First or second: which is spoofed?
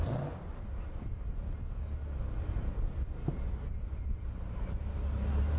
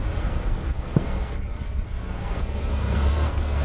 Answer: second